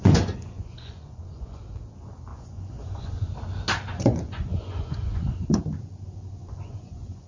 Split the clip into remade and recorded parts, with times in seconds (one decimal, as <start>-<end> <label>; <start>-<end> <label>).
0.0-1.6 remade; 1.6-2.3 recorded; 2.3-3.3 remade; 3.3-3.9 recorded; 3.9-5.6 remade; 5.6-6.4 recorded; 6.4-7.3 remade